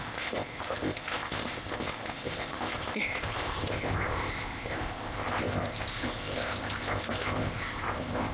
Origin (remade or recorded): remade